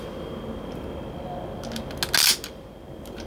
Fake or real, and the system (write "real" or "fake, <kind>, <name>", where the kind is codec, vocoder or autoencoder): real